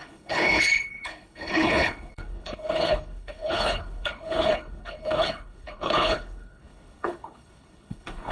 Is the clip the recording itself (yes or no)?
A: no